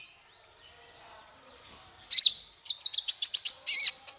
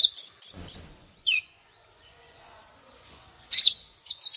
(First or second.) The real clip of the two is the first